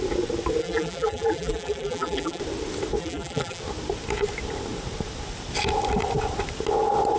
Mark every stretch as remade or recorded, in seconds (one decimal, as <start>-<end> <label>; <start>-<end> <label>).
0.0-0.6 recorded; 0.6-2.4 remade; 2.4-3.0 recorded; 3.0-3.6 remade; 3.6-7.2 recorded